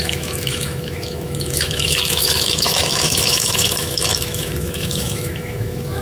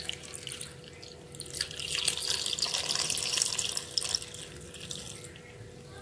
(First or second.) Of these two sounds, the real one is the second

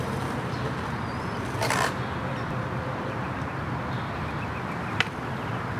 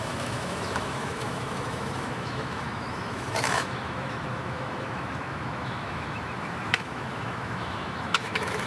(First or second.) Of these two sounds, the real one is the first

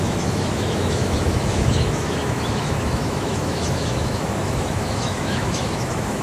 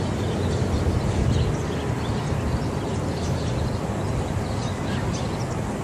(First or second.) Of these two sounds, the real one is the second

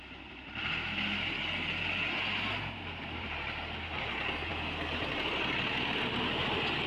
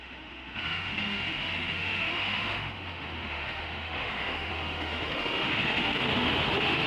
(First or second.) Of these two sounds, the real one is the first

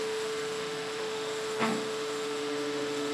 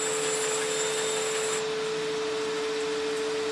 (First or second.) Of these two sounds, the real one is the second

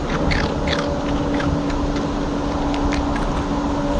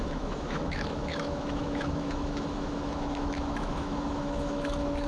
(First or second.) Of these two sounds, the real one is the first